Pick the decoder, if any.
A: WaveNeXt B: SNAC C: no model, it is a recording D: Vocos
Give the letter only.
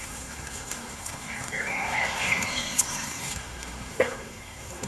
B